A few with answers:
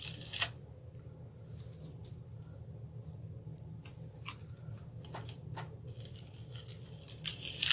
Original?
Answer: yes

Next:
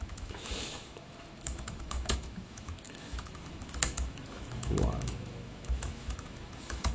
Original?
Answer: no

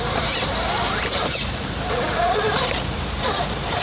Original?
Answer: no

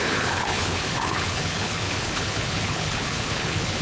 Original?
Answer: no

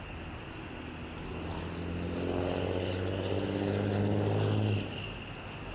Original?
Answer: yes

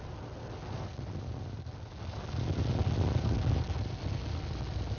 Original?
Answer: yes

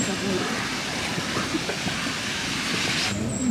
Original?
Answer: yes